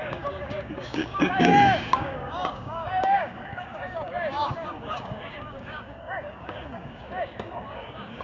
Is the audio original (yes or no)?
no